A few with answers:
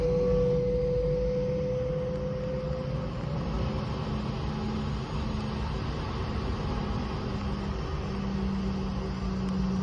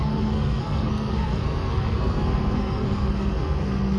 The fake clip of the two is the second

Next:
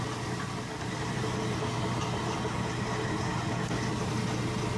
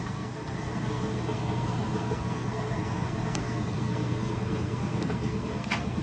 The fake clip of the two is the second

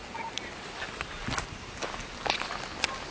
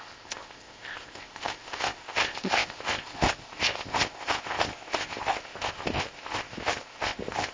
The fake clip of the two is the second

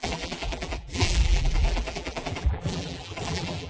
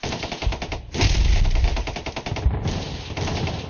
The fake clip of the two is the first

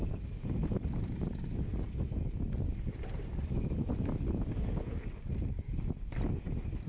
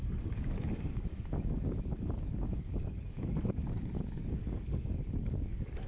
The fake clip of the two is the second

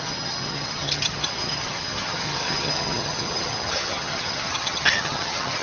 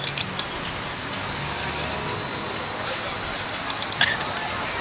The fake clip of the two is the first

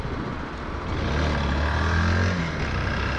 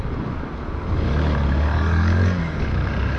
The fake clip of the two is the second